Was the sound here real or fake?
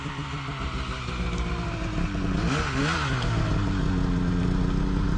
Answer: real